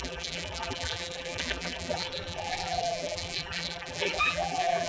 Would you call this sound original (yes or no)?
no